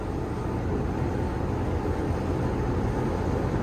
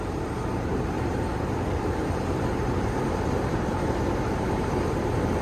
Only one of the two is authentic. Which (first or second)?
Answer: first